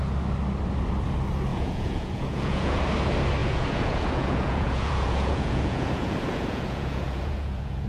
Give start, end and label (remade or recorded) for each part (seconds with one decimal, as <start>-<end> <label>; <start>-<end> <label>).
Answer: 0.0-1.5 recorded; 1.5-2.8 remade; 2.8-3.4 recorded; 3.4-7.9 remade